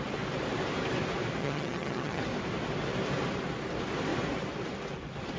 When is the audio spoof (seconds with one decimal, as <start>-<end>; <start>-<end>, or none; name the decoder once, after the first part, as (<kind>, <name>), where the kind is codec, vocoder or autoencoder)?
1.4-2.2 (vocoder, HiFi-GAN)

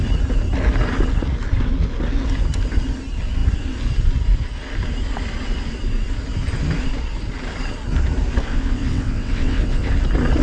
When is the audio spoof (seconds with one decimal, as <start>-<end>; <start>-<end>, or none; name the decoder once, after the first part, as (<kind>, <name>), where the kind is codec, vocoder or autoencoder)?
8.5-9.9 (vocoder, WaveNeXt)

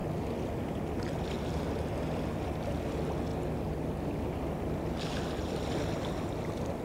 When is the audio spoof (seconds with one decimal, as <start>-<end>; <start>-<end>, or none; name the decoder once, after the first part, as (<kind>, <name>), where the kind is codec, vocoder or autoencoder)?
none

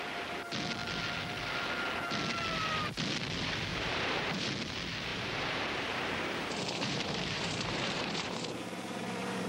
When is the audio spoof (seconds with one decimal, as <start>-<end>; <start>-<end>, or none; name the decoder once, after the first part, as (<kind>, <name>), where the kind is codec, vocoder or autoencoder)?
3.7-4.5 (vocoder, BigVGAN v2); 5.1-9.5

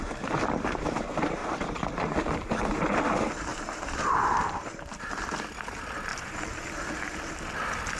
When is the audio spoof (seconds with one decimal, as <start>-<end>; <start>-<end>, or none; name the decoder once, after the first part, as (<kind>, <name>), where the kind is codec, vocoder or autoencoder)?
1.4-2.6 (vocoder, BigVGAN v2); 3.5-4.9; 6.1-6.6